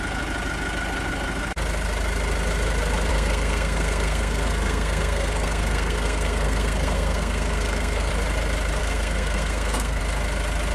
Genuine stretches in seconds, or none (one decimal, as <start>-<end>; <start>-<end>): 0.0-3.1; 8.1-8.8; 10.0-10.7